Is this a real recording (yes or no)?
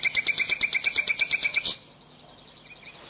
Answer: yes